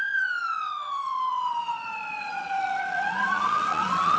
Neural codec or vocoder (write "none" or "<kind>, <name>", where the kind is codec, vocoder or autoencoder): vocoder, WaveNeXt